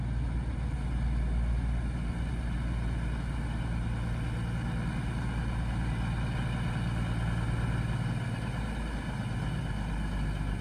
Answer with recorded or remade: recorded